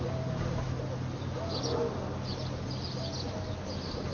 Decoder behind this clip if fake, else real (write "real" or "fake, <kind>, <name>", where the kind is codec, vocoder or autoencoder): real